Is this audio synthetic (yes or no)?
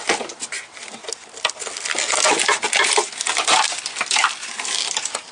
no